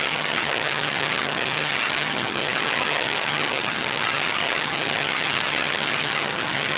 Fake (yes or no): yes